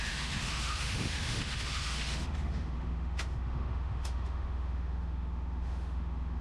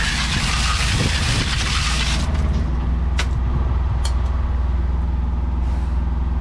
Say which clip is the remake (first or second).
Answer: first